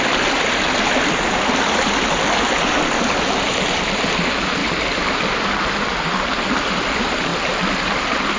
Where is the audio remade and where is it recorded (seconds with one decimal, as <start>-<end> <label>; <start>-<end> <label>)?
0.0-4.6 remade; 4.6-5.1 recorded; 5.1-7.3 remade; 7.3-8.4 recorded